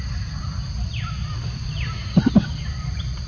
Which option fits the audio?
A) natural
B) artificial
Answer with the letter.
A